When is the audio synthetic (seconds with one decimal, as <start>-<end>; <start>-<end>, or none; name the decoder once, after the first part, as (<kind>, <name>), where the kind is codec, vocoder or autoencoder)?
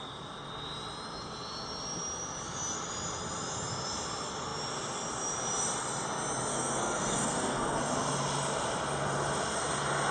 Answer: 6.5-7.8 (codec, SNAC)